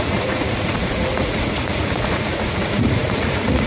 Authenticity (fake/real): fake